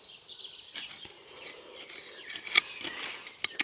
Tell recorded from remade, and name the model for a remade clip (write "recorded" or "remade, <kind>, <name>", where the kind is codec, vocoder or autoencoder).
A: recorded